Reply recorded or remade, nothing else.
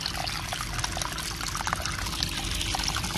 recorded